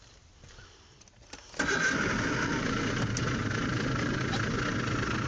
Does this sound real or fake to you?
real